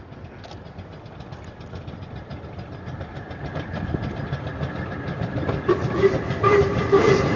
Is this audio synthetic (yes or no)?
no